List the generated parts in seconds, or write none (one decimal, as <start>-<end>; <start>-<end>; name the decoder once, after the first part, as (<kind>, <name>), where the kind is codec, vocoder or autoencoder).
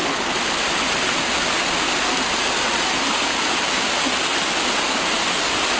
none